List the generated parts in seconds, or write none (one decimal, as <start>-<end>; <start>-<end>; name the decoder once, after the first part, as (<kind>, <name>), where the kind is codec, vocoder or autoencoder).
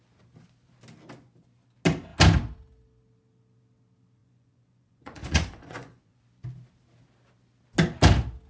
4.2-6.2 (vocoder, Vocos)